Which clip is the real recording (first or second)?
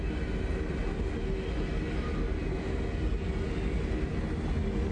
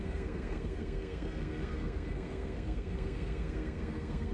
first